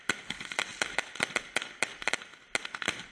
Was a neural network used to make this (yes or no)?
no